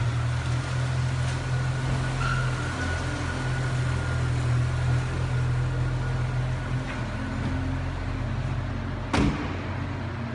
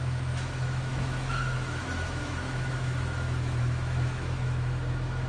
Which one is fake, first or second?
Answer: second